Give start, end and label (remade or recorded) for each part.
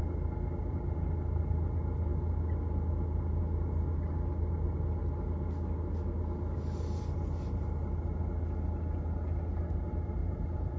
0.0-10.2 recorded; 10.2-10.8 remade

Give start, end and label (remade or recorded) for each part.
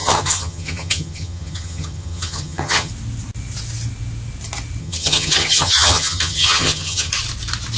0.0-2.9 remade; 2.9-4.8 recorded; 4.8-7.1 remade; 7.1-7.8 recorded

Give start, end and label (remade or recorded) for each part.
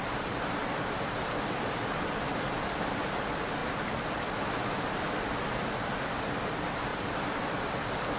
0.0-3.6 recorded; 3.6-4.5 remade; 4.5-6.9 recorded; 6.9-8.2 remade